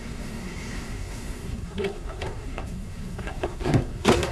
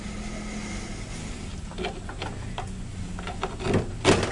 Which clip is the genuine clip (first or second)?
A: second